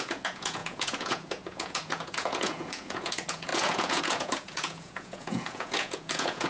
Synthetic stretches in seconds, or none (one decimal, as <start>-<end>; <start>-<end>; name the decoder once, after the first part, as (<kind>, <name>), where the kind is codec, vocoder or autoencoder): 0.0-6.5 (vocoder, Vocos)